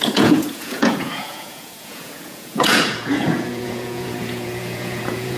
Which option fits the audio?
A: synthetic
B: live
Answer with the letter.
A